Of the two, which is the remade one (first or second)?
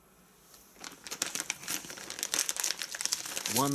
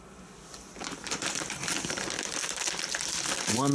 second